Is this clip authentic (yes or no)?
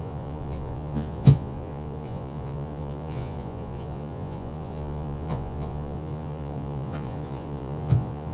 no